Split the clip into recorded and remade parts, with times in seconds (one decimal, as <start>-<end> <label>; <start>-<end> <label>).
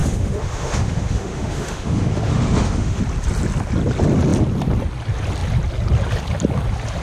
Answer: 0.0-3.0 remade; 3.0-7.0 recorded